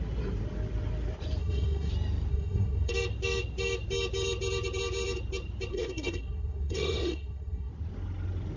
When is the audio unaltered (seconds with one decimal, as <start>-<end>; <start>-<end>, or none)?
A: 0.0-1.4; 1.9-2.3; 2.9-5.7; 7.7-8.6